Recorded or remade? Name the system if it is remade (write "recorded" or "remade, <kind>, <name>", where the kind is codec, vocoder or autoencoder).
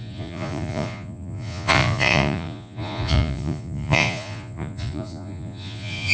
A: remade, vocoder, Vocos